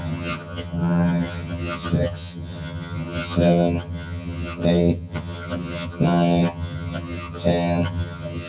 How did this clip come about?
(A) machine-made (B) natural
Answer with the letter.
A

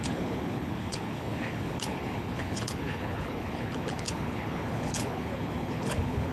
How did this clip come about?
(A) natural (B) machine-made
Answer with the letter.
B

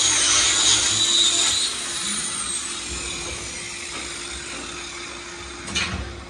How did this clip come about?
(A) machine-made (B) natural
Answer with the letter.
B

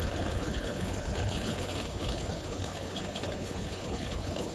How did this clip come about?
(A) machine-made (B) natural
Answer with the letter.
A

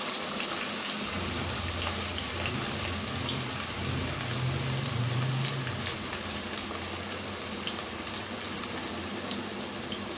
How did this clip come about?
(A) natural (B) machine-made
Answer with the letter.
A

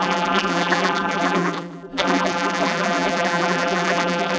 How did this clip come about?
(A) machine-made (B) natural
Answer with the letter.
A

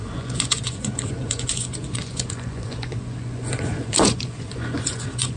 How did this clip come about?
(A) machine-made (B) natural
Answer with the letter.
A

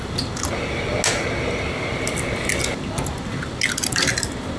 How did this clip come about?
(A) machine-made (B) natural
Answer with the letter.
B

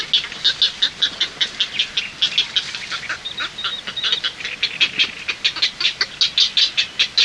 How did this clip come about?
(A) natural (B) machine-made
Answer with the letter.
A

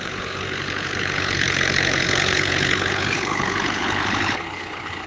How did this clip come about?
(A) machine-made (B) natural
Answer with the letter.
A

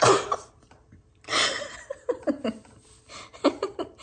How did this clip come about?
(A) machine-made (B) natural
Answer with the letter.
A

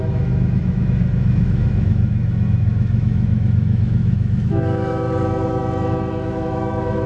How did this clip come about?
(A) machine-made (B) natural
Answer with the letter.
A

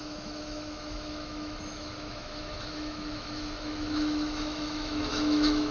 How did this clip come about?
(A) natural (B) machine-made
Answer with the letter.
B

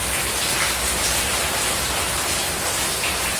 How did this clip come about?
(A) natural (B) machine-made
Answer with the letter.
A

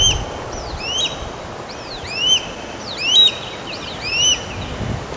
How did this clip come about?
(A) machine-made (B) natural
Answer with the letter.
B